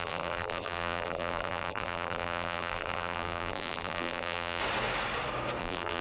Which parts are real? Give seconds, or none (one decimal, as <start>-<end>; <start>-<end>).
4.6-5.6